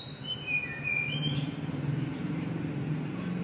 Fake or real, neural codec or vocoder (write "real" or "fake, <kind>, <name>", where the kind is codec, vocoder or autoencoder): real